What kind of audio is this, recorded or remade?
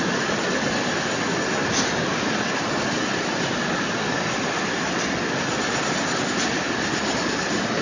recorded